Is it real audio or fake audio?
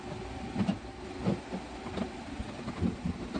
real